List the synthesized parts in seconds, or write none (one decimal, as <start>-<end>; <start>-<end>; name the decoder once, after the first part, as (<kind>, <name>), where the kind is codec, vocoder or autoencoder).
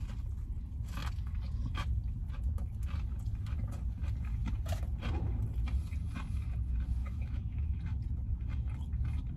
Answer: 7.0-7.8 (autoencoder, DAC-VAE)